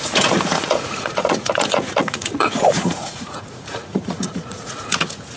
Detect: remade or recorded remade